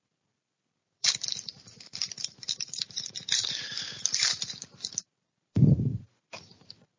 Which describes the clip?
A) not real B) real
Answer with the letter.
A